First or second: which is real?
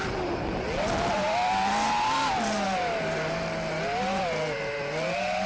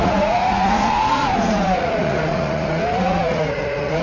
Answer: first